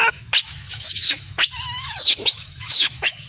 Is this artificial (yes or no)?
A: yes